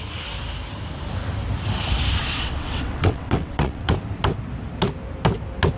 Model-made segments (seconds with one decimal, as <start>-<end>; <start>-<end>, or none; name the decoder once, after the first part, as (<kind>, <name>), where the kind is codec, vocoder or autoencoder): 2.2-3.9 (vocoder, WaveNeXt)